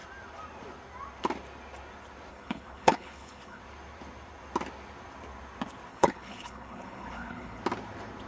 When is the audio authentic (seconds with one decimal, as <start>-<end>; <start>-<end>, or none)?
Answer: 0.0-2.3; 3.6-5.9; 7.6-8.3